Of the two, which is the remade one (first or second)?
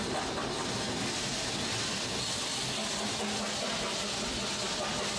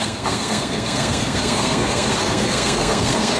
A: second